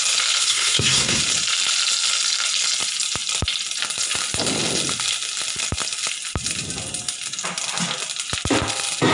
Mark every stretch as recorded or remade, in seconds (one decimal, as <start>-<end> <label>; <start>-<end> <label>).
0.0-0.4 recorded; 0.4-1.2 remade; 1.2-9.1 recorded